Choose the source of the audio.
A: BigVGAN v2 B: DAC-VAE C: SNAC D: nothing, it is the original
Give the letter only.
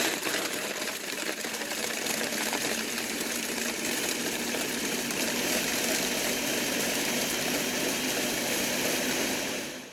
A